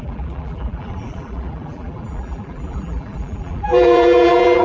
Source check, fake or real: fake